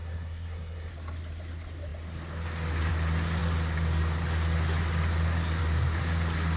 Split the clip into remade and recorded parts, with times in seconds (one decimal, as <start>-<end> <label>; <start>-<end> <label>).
0.0-0.9 remade; 0.9-6.6 recorded